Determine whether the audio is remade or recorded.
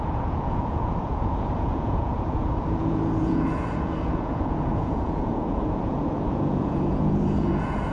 remade